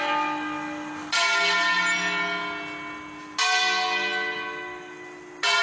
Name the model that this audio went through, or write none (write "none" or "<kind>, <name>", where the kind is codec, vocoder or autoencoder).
none